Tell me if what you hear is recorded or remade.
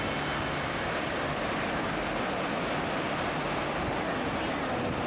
recorded